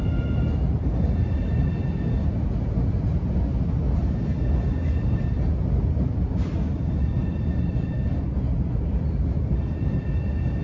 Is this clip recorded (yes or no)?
yes